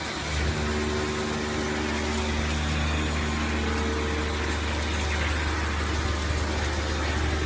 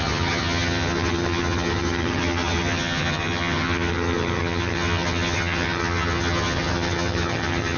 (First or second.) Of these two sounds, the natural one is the first